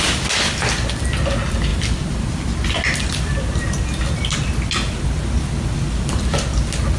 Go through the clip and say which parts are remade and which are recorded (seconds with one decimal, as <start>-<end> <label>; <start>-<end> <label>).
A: 0.0-7.0 recorded